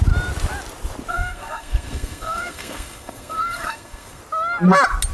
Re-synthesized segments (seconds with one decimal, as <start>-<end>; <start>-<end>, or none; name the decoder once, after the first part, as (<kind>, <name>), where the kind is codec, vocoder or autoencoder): 1.1-4.2 (codec, SNAC)